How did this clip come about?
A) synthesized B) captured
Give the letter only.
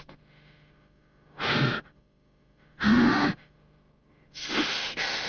A